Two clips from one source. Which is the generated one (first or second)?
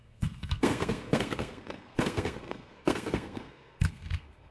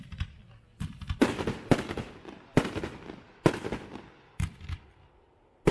first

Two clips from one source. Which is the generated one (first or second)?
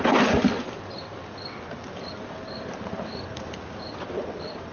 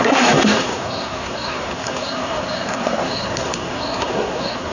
second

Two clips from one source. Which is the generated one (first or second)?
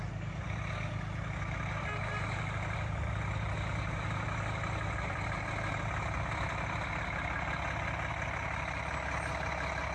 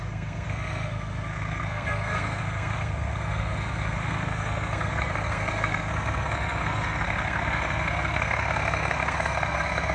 second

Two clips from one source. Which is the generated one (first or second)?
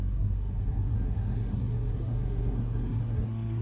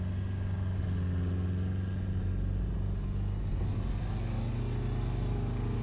first